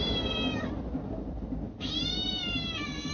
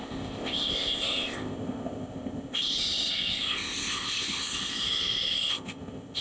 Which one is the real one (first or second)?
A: first